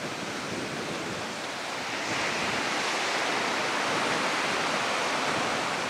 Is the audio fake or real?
real